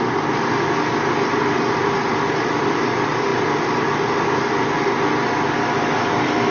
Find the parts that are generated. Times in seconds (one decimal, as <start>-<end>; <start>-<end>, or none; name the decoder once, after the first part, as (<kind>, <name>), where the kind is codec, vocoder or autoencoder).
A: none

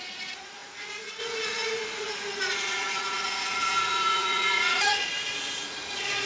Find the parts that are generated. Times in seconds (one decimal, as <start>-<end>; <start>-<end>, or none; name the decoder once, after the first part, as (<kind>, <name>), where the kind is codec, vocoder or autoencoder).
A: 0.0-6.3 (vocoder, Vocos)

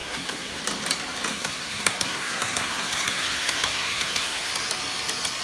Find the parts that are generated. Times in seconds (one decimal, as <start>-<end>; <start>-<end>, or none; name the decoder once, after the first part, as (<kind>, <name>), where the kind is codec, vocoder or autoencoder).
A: 0.0-0.6 (codec, SNAC); 1.3-4.5

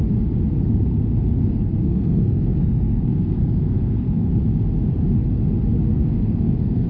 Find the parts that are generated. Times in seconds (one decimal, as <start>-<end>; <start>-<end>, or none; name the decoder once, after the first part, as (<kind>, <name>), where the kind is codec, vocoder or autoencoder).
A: 0.5-4.3 (codec, SNAC); 5.9-6.9

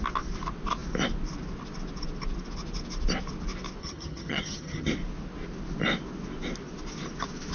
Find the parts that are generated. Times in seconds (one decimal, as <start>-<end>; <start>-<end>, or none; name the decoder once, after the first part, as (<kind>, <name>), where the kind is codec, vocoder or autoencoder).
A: 3.8-4.9 (vocoder, HiFi-GAN)